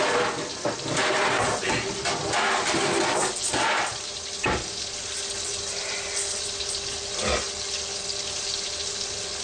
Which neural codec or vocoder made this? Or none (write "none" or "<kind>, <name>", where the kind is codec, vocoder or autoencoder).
none